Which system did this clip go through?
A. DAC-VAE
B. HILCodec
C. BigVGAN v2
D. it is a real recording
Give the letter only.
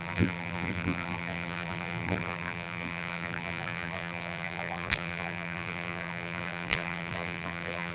C